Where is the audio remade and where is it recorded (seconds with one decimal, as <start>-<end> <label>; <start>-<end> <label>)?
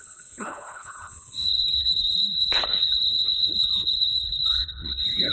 0.0-5.3 remade